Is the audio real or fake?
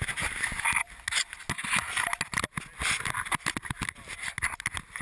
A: real